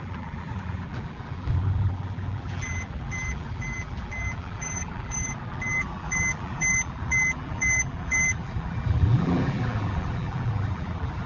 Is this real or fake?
fake